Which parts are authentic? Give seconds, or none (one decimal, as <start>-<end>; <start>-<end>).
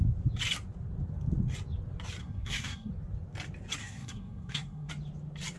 0.0-2.2; 2.9-3.8; 4.9-5.6